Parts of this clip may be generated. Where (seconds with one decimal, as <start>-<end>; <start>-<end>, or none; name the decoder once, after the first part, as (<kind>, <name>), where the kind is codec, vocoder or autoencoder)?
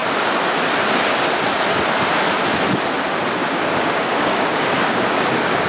3.4-5.7 (codec, DAC)